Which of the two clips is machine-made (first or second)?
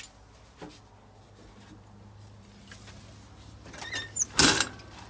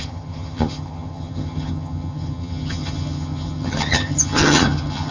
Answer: second